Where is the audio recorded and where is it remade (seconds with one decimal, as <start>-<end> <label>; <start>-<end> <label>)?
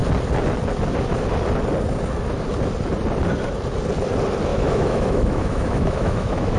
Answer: 0.0-4.5 recorded; 4.5-6.6 remade